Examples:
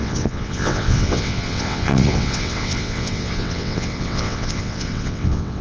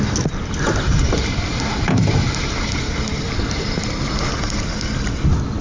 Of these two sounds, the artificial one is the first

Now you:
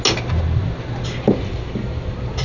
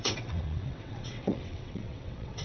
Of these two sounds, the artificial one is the second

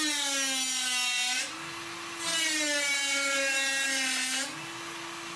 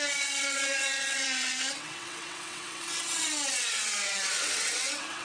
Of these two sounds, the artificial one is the second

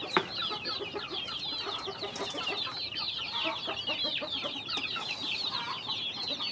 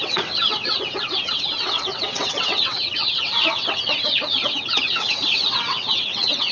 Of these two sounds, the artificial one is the second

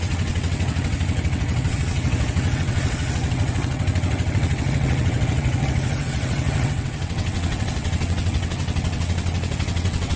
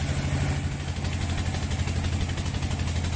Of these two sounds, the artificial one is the first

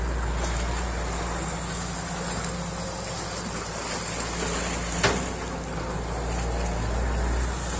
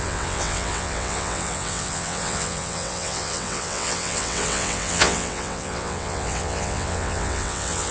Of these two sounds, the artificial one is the second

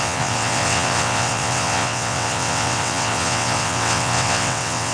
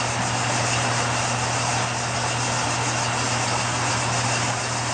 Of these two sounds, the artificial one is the first